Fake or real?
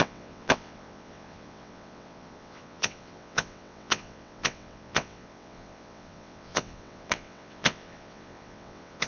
fake